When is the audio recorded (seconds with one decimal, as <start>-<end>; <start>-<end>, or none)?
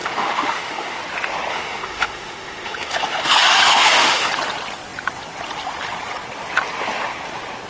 1.0-1.5; 4.3-7.7